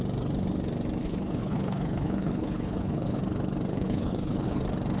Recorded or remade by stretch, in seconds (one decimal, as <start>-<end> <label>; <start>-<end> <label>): 0.0-1.0 recorded; 1.0-3.2 remade; 3.2-3.7 recorded; 3.7-4.6 remade; 4.6-5.0 recorded